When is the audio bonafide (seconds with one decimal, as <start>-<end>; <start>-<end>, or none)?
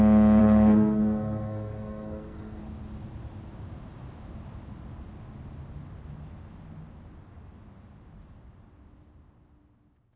0.0-0.4; 2.6-10.2